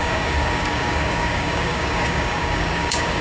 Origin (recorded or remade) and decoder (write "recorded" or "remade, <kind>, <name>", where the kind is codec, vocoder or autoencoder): remade, codec, DAC